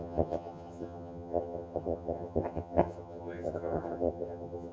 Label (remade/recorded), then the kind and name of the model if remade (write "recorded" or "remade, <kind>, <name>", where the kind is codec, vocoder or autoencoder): remade, vocoder, HiFi-GAN